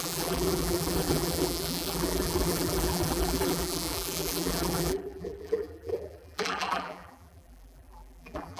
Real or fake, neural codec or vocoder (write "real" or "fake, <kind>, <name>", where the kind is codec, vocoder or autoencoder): fake, vocoder, BigVGAN v2